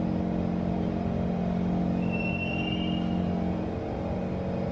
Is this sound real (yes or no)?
yes